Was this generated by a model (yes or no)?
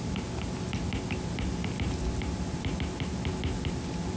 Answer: no